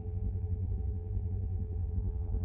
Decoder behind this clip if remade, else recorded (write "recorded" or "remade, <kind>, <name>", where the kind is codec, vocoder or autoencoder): remade, vocoder, BigVGAN v2